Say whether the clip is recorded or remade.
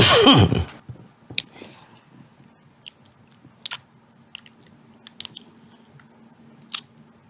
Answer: recorded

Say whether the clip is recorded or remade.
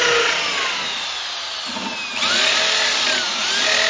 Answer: recorded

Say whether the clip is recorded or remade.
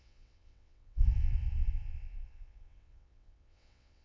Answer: remade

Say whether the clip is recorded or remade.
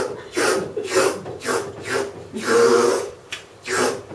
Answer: recorded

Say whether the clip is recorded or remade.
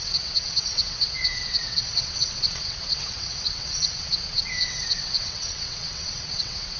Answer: remade